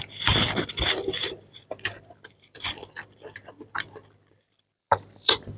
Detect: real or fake fake